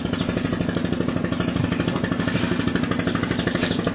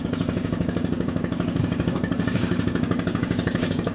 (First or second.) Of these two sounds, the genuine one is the first